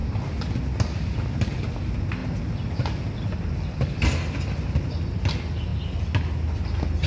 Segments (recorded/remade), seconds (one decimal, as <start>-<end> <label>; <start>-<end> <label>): 0.0-7.1 recorded